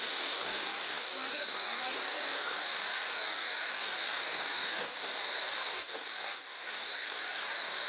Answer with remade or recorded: remade